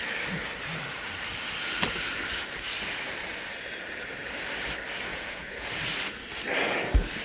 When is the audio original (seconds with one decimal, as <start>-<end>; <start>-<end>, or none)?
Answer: 0.0-5.1; 5.7-7.2